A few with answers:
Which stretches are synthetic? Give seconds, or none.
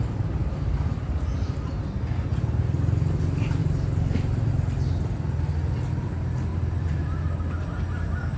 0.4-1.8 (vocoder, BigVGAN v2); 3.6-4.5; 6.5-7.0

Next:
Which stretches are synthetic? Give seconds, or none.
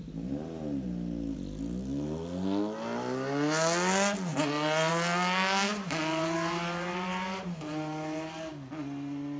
5.7-8.5 (vocoder, BigVGAN v2)